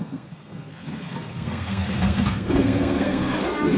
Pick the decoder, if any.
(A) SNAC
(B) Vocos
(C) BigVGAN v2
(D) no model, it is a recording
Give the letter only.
A